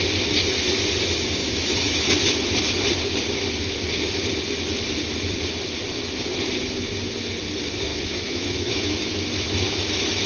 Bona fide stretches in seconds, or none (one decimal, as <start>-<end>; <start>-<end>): 0.0-1.4; 2.1-7.9; 9.3-10.3